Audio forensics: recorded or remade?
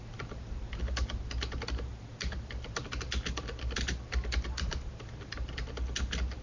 recorded